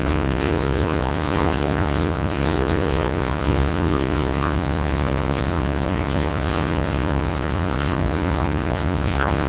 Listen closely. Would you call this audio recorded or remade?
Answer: remade